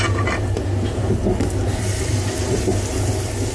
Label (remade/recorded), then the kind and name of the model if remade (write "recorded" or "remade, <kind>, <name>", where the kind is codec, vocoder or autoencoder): recorded